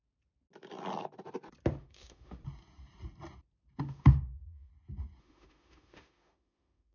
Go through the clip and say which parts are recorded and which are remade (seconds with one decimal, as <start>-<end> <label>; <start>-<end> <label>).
0.0-1.8 recorded; 1.8-2.4 remade; 2.4-3.8 recorded; 3.8-4.7 remade; 4.7-5.2 recorded; 5.2-6.9 remade